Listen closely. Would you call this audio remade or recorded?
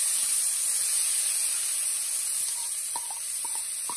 remade